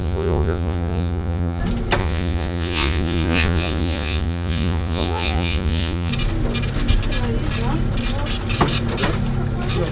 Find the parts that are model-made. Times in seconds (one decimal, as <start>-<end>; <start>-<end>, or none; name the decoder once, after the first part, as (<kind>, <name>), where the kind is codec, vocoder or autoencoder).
0.0-1.6 (vocoder, Vocos); 2.0-6.1